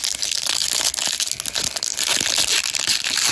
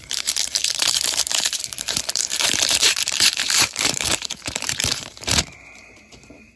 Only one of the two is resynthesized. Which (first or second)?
second